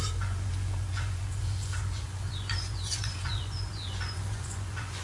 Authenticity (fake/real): fake